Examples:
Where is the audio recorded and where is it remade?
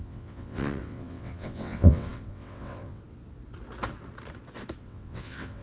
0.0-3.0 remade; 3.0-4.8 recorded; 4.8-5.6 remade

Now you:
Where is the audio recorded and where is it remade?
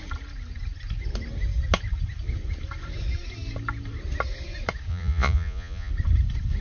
0.0-4.9 recorded; 4.9-5.9 remade; 5.9-6.6 recorded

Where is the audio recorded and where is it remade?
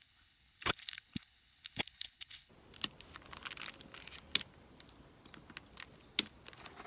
0.0-2.5 remade; 2.5-6.9 recorded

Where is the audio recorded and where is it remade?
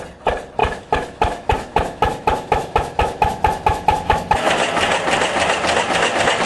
0.0-0.6 recorded; 0.6-4.5 remade; 4.5-6.5 recorded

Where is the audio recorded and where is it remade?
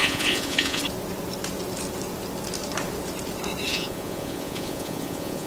0.0-0.8 remade; 0.8-3.7 recorded; 3.7-5.5 remade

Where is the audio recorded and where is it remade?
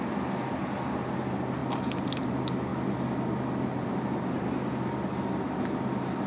0.0-6.3 recorded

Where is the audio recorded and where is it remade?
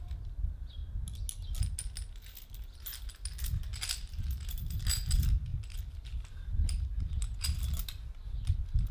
0.0-0.8 remade; 0.8-2.5 recorded; 2.5-8.9 remade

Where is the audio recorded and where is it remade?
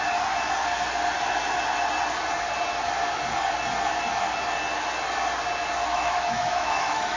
0.0-5.8 recorded; 5.8-7.2 remade